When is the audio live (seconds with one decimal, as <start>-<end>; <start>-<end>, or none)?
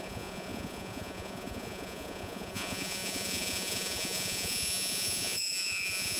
none